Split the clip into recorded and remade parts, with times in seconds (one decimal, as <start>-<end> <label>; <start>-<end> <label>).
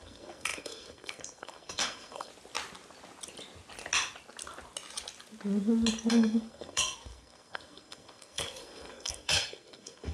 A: 0.0-2.3 remade; 2.3-6.1 recorded; 6.1-10.1 remade